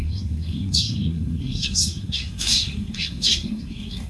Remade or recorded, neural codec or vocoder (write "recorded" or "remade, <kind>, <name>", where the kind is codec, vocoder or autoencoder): remade, codec, SNAC